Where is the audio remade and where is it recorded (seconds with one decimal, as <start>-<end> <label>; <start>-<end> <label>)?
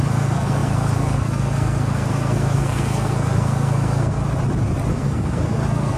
0.0-4.2 remade; 4.2-4.9 recorded; 4.9-6.0 remade